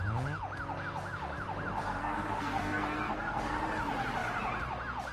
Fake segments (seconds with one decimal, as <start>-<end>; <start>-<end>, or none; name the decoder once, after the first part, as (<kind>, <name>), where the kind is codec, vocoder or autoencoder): 1.8-3.6 (codec, SNAC)